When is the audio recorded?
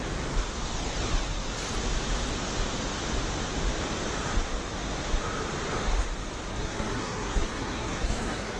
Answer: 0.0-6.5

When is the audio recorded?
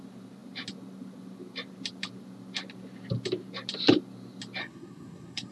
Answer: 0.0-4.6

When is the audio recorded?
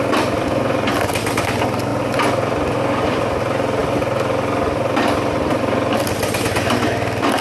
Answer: 0.0-7.4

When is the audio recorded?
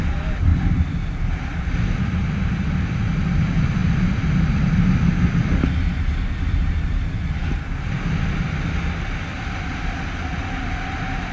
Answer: 0.0-11.3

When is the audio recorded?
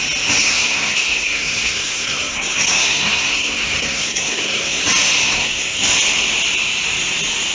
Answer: 0.0-0.4; 4.8-5.2; 5.8-7.5